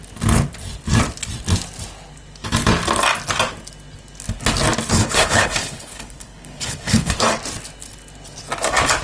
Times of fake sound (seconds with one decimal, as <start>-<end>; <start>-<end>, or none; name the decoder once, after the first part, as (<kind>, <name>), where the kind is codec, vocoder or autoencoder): 4.9-7.2 (codec, HILCodec)